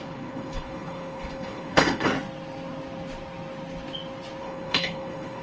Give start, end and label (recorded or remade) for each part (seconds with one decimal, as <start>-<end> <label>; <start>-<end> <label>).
0.0-2.1 remade; 2.1-4.4 recorded; 4.4-5.4 remade